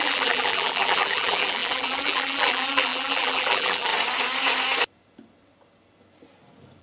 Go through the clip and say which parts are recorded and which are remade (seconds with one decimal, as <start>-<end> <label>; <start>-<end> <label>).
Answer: 0.0-3.9 remade; 3.9-6.8 recorded